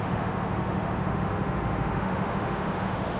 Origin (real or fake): fake